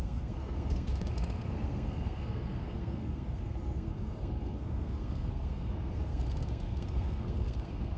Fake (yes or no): yes